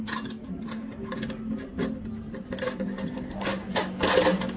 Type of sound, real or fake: real